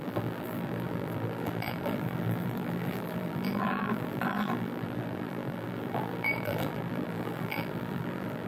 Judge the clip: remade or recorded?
remade